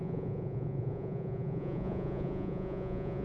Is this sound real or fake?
fake